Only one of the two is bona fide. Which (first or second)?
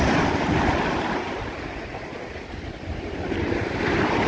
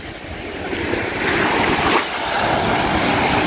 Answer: second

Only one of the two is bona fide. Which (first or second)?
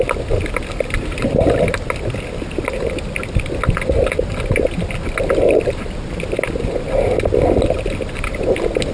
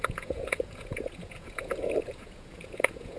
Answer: first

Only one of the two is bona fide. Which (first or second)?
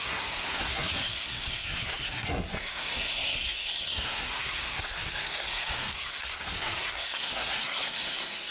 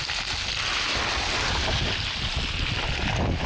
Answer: second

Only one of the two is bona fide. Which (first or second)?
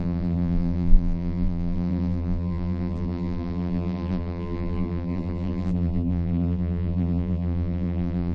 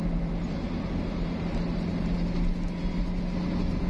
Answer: second